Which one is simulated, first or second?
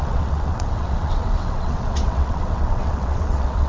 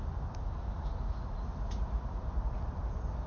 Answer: first